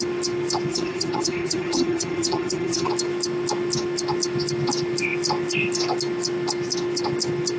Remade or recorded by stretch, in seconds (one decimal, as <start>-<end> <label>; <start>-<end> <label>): 0.0-0.7 recorded; 0.7-2.9 remade; 2.9-7.6 recorded